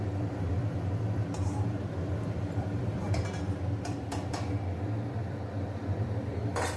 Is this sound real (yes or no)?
no